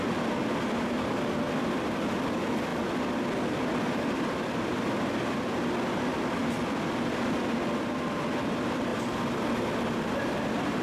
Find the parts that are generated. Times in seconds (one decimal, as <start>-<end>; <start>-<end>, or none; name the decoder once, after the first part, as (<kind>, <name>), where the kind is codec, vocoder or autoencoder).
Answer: 0.0-2.7 (vocoder, BigVGAN v2); 3.6-6.4; 7.1-8.9; 10.2-10.8

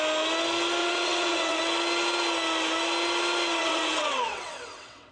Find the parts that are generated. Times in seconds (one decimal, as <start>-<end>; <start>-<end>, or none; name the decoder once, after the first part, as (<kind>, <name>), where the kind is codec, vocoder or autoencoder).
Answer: 0.8-1.6 (vocoder, WaveNeXt); 3.6-5.1

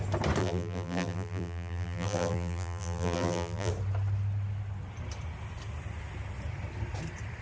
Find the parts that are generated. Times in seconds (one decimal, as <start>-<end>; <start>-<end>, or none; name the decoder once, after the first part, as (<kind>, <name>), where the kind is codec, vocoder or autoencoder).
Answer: 0.4-3.7 (vocoder, BigVGAN v2)

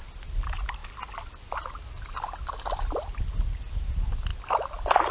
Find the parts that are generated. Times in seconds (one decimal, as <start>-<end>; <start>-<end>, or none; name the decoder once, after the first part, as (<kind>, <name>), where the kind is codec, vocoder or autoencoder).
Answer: none

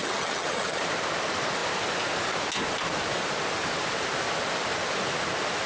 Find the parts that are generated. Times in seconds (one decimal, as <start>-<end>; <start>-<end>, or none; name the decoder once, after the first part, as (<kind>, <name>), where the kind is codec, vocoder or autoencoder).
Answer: 0.0-0.8 (vocoder, HiFi-GAN)

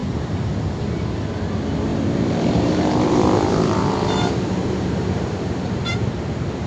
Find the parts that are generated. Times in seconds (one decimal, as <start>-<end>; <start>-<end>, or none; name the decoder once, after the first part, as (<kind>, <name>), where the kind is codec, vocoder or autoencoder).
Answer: 0.0-0.7 (vocoder, BigVGAN v2); 1.9-5.8